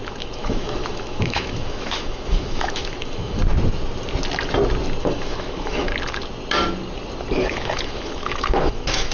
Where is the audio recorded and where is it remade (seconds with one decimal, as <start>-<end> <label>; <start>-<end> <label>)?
0.0-3.4 remade; 3.4-5.0 recorded; 5.0-5.9 remade; 5.9-7.5 recorded; 7.5-9.1 remade